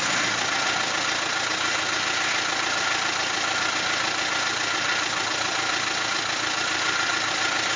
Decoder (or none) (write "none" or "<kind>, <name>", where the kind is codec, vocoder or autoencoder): none